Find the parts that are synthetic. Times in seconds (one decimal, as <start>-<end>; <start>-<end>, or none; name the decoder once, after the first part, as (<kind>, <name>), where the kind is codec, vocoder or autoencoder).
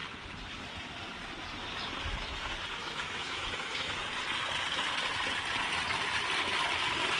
2.8-3.9 (autoencoder, DAC-VAE)